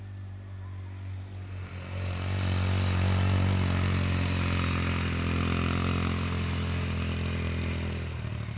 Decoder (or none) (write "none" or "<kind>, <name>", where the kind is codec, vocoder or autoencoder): none